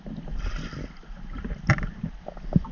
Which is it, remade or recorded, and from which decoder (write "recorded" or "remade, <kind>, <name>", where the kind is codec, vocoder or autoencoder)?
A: recorded